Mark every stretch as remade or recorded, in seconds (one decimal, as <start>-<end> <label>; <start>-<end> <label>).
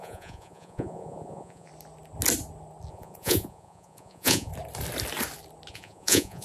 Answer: 0.0-1.7 remade; 1.7-2.9 recorded; 2.9-4.5 remade; 4.5-5.7 recorded; 5.7-6.4 remade